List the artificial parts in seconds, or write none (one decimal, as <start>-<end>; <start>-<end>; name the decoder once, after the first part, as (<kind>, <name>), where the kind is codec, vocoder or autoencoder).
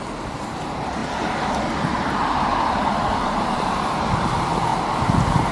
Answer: 0.0-1.0 (vocoder, BigVGAN v2); 2.6-4.7